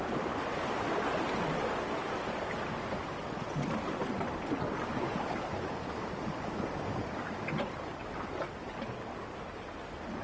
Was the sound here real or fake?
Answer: real